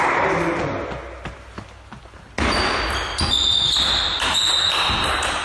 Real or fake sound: real